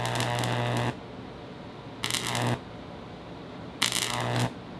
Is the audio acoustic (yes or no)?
yes